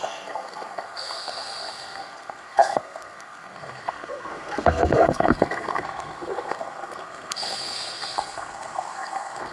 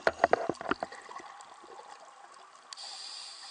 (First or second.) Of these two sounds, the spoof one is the first